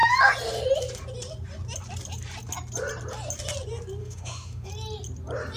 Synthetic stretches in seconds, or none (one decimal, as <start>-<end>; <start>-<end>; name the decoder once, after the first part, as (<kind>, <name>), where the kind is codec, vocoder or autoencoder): 4.0-4.7 (autoencoder, DAC-VAE)